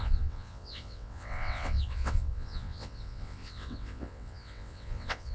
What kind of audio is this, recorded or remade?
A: remade